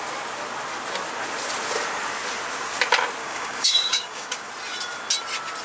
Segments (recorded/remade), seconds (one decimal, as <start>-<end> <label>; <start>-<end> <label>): 0.0-3.2 recorded; 3.2-4.5 remade; 4.5-5.6 recorded

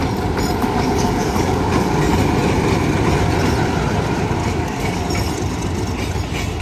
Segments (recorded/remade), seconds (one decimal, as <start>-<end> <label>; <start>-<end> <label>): 0.0-0.6 recorded; 0.6-2.0 remade; 2.0-4.4 recorded; 4.4-5.0 remade; 5.0-6.6 recorded